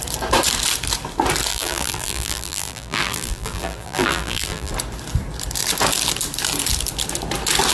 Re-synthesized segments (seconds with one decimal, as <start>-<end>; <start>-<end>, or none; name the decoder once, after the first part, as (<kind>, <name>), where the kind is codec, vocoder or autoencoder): 1.5-4.7 (vocoder, BigVGAN v2)